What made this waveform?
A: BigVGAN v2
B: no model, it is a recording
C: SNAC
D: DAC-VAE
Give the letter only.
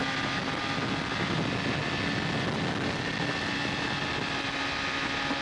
B